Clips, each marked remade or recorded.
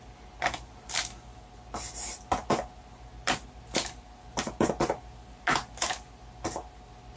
recorded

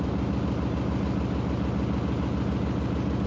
recorded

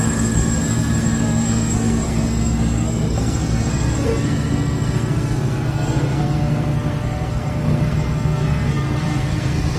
remade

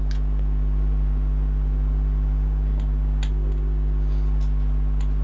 recorded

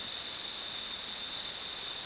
recorded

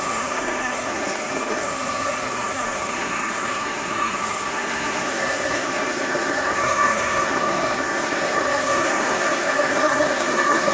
remade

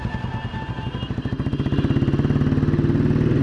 recorded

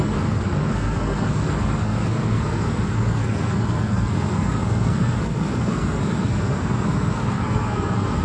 remade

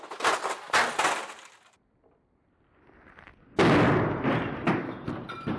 recorded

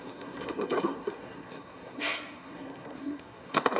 remade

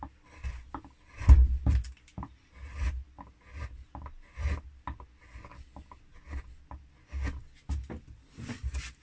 recorded